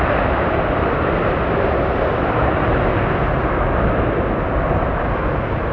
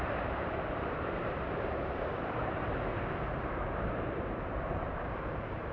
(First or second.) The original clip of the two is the first